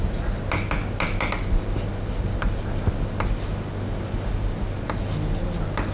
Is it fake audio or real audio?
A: real